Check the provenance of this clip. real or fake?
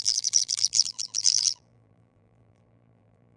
fake